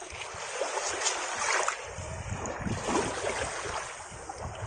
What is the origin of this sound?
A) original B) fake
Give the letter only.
A